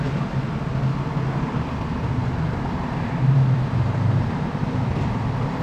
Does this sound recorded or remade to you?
recorded